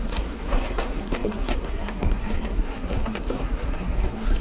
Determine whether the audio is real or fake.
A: fake